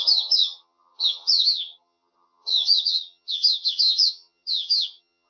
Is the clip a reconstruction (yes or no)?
yes